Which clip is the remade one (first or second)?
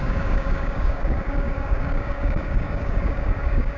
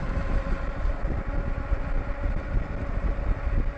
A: first